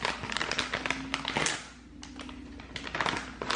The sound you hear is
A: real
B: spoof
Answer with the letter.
A